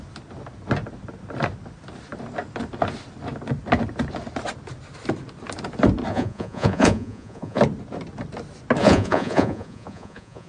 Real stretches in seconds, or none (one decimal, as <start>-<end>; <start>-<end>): 0.0-6.1; 7.6-8.8